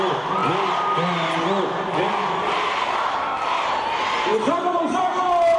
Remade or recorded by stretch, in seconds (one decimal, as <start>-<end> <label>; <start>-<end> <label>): 0.0-4.3 recorded; 4.3-5.0 remade; 5.0-5.6 recorded